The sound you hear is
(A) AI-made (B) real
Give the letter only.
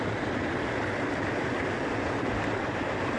B